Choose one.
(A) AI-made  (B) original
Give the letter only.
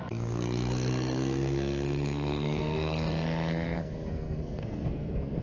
A